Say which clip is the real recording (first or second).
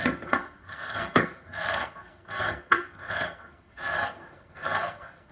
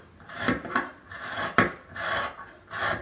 second